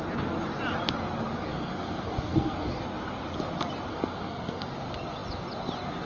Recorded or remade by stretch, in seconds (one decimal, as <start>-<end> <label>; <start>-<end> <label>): 0.0-1.5 recorded; 1.5-2.7 remade; 2.7-3.9 recorded; 3.9-4.7 remade; 4.7-6.1 recorded